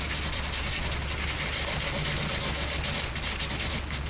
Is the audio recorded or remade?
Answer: recorded